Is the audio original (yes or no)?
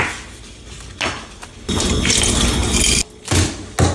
yes